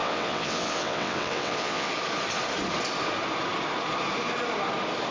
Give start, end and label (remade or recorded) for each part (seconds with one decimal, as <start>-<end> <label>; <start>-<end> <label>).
0.0-1.9 remade; 1.9-5.1 recorded